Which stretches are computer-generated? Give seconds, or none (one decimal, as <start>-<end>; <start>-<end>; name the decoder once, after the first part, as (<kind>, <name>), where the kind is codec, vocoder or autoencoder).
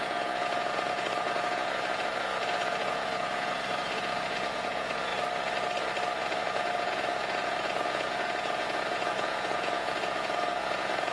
0.0-5.1 (vocoder, Vocos); 6.4-11.1